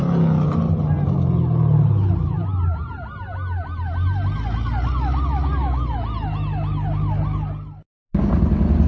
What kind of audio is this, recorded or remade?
recorded